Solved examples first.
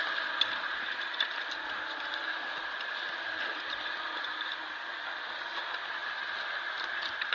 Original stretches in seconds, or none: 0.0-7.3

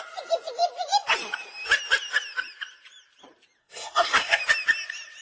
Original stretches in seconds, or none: 0.0-3.6; 4.4-5.2

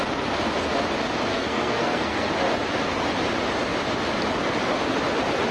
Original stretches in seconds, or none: 0.0-1.3; 2.3-5.5

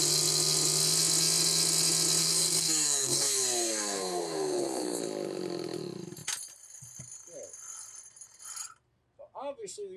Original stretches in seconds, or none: 0.0-2.2; 5.0-10.0

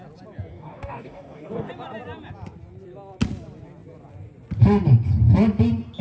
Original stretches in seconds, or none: 0.0-0.5; 1.7-6.0